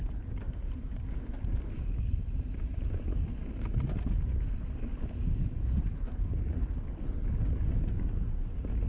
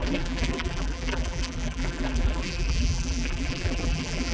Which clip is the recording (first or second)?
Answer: first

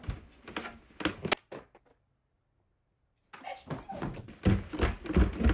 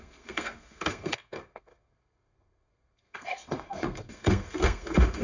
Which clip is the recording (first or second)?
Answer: first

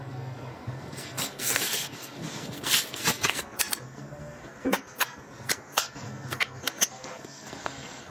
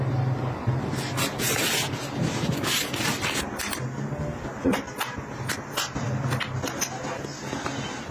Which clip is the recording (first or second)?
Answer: second